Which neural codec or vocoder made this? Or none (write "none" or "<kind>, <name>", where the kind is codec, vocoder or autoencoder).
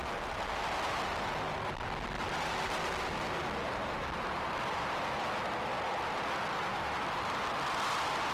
none